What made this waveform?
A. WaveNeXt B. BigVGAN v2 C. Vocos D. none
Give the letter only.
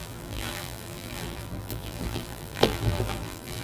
B